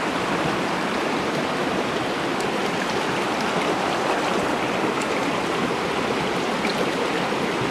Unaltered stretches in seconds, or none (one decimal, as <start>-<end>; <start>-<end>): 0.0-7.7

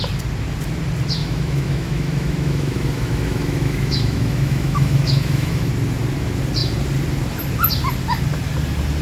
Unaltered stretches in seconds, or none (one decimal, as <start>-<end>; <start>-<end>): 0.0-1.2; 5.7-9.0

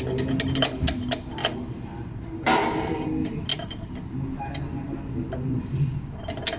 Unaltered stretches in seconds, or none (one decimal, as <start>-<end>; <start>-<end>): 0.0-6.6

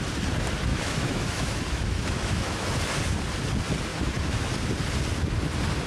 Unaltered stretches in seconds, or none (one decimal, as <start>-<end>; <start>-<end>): 0.0-0.7; 2.8-3.9; 4.5-5.9

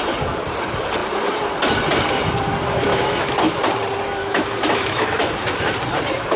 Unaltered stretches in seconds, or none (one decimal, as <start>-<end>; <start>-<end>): 0.0-2.9; 3.6-4.2; 5.3-6.4

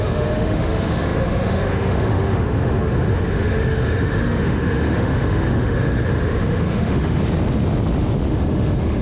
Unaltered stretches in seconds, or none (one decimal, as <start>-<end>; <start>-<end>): 7.2-8.3